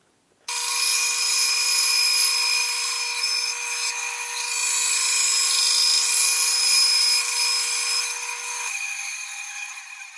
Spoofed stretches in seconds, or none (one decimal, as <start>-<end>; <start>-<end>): none

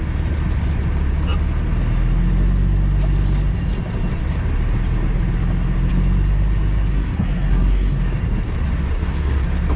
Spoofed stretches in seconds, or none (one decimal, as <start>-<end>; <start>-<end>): 6.9-8.0; 8.9-9.4

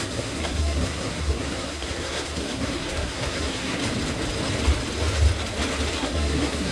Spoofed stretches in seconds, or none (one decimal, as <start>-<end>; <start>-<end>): 0.0-3.8; 5.9-6.7